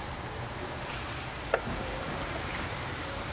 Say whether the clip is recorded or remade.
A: remade